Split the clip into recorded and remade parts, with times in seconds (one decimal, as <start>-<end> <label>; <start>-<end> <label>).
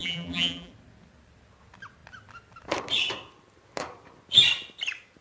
0.0-0.7 remade; 0.7-5.2 recorded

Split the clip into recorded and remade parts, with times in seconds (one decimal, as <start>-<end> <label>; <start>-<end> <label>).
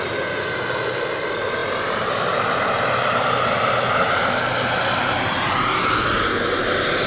0.0-7.1 recorded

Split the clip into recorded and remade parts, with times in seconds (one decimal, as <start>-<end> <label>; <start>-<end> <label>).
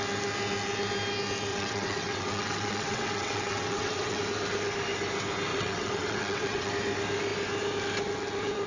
0.0-1.5 recorded; 1.5-4.2 remade; 4.2-5.5 recorded; 5.5-6.7 remade; 6.7-8.7 recorded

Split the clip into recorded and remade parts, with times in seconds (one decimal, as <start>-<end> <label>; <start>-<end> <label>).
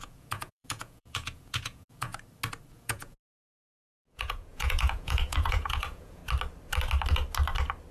0.0-2.1 remade; 2.1-2.7 recorded; 2.7-6.2 remade; 6.2-7.9 recorded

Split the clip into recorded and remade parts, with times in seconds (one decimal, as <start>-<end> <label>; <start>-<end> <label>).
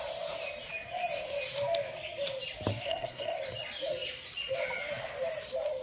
0.0-2.7 recorded; 2.7-3.4 remade; 3.4-5.8 recorded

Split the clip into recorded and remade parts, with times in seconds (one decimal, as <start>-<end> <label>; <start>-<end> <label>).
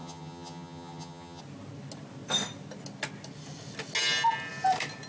0.0-1.4 remade; 1.4-5.1 recorded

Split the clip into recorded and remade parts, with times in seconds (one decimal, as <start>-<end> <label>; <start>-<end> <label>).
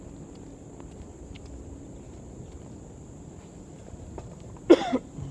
0.0-3.8 recorded; 3.8-5.3 remade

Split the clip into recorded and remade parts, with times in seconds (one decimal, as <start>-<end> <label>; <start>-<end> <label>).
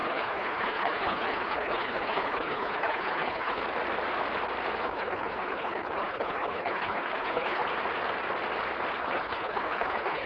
0.0-3.6 remade; 3.6-4.8 recorded; 4.8-7.6 remade; 7.6-9.0 recorded; 9.0-10.3 remade